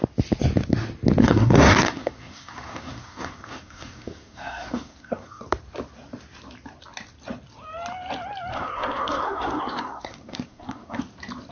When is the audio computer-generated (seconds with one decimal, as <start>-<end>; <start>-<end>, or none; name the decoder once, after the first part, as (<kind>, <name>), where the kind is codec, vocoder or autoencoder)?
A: 1.2-5.4 (codec, SNAC); 8.5-11.0

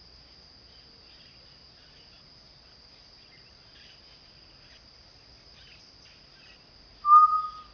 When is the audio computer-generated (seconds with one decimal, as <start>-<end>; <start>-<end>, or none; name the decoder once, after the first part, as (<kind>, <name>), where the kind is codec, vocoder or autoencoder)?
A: none

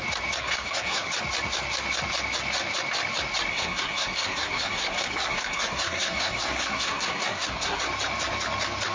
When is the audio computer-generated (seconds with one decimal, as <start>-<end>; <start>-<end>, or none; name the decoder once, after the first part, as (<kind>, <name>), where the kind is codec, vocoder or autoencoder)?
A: 0.4-1.1 (codec, SNAC); 3.5-7.8